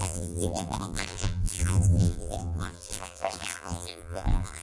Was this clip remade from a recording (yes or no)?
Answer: yes